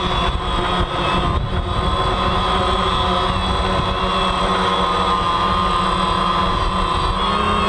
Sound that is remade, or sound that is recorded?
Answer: recorded